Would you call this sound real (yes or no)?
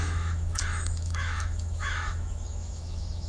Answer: no